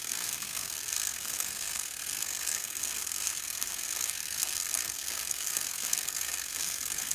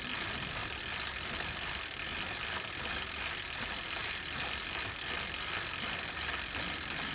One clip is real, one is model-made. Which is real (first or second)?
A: second